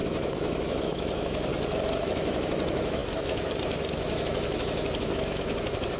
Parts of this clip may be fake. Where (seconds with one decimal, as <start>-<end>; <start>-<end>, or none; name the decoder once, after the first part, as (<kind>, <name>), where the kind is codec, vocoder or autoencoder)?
0.0-1.5 (autoencoder, DAC-VAE); 2.1-6.0